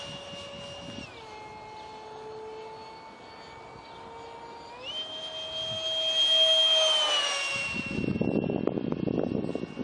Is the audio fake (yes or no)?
no